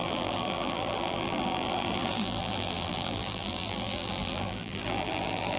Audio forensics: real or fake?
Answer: fake